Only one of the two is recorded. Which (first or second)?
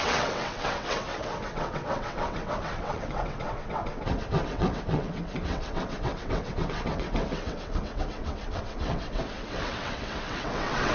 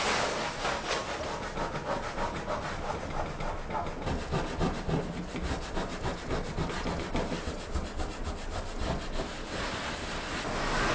second